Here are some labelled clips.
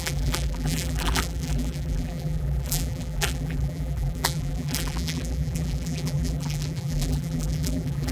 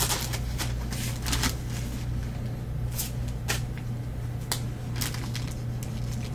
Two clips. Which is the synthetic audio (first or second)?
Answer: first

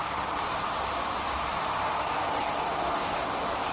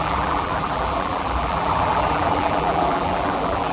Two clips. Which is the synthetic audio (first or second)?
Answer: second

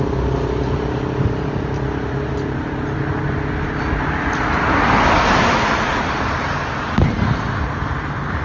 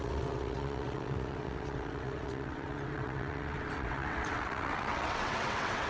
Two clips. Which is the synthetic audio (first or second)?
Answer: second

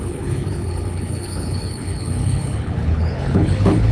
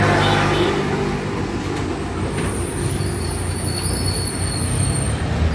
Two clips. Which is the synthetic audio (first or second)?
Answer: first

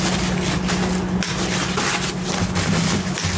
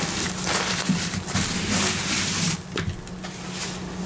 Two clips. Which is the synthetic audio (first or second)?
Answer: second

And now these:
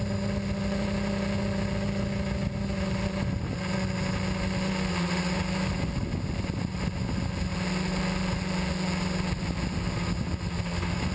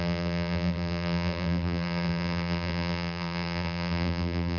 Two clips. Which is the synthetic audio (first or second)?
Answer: second